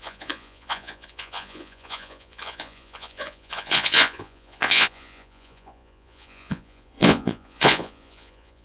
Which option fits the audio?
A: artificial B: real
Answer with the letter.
A